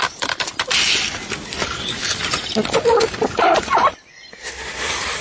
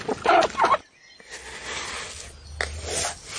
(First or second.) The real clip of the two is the second